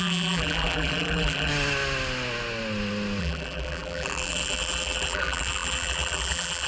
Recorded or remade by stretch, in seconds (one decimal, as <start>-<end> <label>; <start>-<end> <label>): 0.0-1.5 remade; 1.5-3.2 recorded; 3.2-6.7 remade